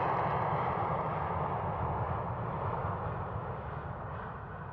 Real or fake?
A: real